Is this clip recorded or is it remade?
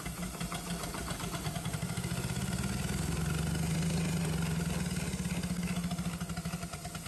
recorded